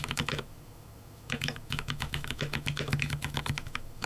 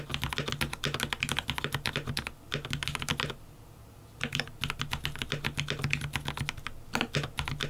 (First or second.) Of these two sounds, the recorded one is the second